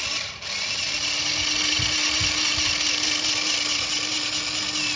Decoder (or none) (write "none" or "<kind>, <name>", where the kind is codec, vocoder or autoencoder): none